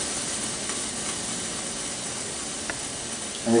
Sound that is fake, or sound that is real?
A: real